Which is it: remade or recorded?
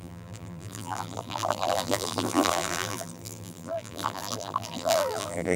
remade